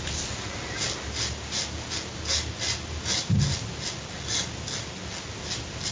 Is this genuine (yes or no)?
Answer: yes